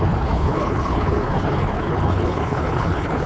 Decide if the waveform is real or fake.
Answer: fake